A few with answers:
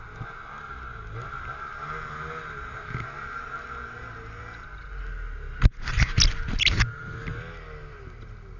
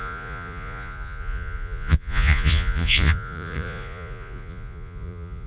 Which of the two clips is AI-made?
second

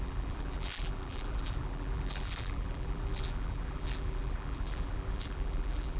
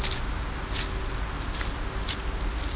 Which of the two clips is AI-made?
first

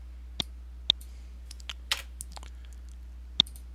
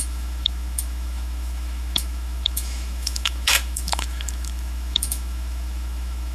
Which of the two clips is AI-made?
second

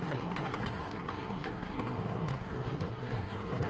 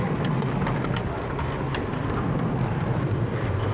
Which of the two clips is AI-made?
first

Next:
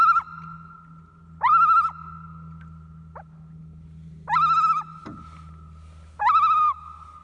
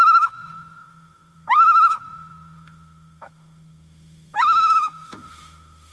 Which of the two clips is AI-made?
second